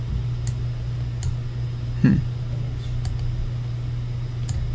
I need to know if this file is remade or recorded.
recorded